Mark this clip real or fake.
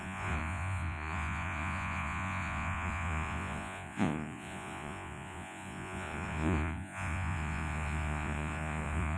fake